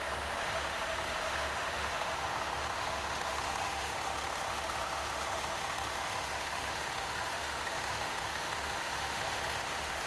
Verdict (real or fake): fake